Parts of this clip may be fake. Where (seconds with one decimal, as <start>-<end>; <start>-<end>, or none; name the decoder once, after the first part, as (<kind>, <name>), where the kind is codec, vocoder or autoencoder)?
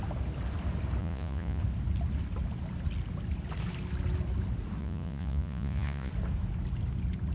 1.0-1.6 (vocoder, Vocos); 4.8-6.1